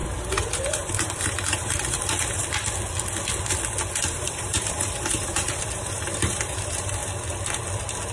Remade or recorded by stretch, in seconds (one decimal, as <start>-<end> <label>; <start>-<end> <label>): 0.0-2.4 remade; 2.4-4.0 recorded; 4.0-7.0 remade; 7.0-8.1 recorded